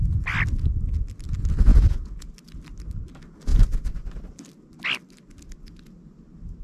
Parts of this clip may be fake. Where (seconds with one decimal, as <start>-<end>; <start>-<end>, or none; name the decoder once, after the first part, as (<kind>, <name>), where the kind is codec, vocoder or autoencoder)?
1.7-2.3 (vocoder, Vocos)